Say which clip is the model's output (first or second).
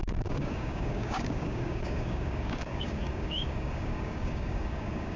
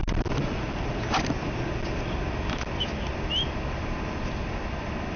first